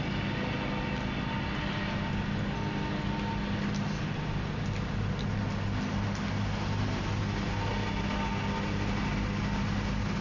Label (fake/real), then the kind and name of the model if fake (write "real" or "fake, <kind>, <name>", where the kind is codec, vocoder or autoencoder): real